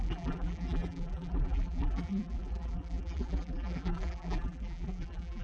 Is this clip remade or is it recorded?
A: remade